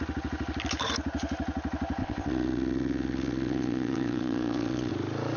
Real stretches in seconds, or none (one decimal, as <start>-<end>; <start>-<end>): 0.0-2.0; 4.9-5.4